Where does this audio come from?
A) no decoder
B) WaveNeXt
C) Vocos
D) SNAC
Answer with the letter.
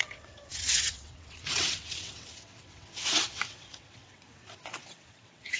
B